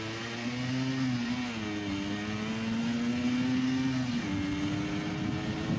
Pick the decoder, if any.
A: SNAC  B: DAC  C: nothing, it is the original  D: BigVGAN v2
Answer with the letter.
C